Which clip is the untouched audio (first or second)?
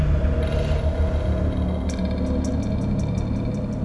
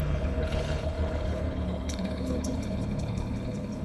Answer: first